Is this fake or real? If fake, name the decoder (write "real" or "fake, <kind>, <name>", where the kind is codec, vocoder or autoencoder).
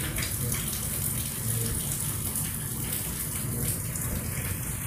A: fake, vocoder, BigVGAN v2